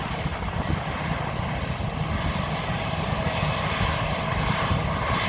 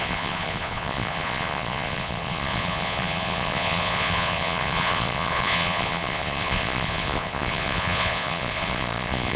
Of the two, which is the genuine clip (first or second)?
first